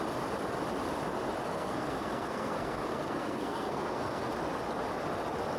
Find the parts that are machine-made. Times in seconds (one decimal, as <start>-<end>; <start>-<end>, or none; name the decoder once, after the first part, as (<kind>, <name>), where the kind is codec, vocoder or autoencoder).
1.4-4.3 (codec, SNAC)